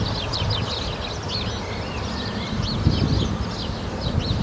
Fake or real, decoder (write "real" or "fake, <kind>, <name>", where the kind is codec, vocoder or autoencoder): real